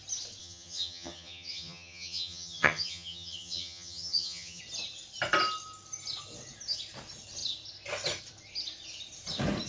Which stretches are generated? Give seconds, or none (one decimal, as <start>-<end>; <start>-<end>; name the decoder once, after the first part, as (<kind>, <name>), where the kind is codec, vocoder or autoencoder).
0.4-4.6 (vocoder, HiFi-GAN)